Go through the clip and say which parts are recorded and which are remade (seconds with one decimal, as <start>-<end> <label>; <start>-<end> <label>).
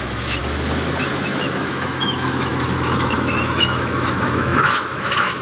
0.0-0.4 remade; 0.4-1.1 recorded; 1.1-5.4 remade